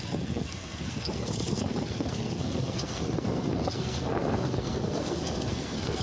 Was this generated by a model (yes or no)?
yes